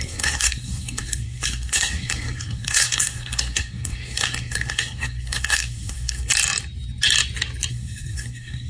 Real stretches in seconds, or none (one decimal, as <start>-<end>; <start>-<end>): 6.3-7.7